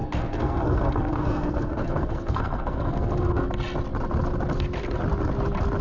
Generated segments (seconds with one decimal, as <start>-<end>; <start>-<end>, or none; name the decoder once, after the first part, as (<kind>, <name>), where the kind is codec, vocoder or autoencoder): 0.0-3.5 (codec, SNAC)